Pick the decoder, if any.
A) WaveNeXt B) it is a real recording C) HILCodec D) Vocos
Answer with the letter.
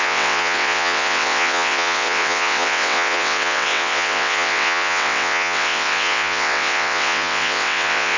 A